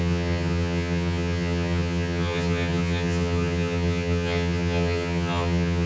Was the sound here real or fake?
fake